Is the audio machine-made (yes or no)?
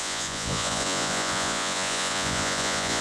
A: yes